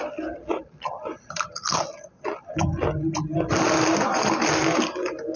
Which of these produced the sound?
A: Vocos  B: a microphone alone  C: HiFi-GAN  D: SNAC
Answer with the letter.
B